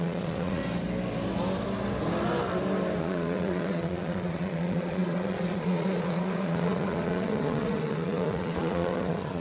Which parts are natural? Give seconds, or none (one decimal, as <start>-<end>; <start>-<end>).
0.6-3.0